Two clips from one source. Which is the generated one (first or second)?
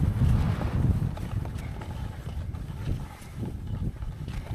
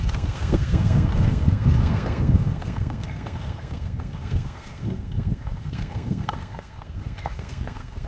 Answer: second